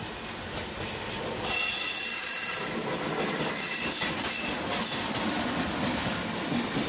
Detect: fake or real real